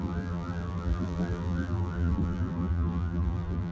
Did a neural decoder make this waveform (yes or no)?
yes